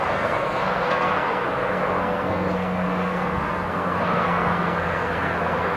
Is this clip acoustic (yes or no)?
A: no